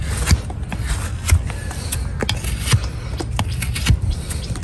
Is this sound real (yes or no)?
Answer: yes